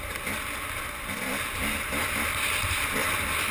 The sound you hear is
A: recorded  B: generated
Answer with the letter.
A